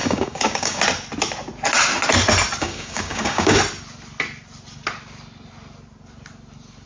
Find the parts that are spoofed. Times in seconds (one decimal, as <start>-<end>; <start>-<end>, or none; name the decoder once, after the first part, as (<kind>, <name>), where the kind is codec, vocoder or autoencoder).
0.0-0.8 (codec, DAC); 2.6-3.6